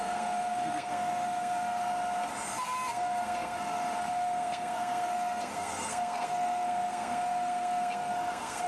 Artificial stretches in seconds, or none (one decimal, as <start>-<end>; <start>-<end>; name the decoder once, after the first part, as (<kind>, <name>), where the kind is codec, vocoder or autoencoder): 0.0-1.9 (codec, SNAC); 2.9-8.7